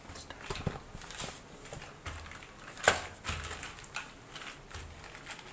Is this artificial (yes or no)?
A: no